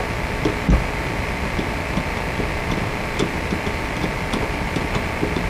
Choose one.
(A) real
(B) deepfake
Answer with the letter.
A